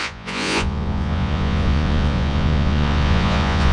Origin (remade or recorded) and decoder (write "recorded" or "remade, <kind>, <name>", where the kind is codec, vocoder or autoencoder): remade, vocoder, Vocos